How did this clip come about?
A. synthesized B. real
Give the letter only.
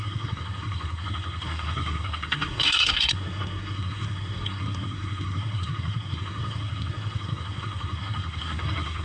A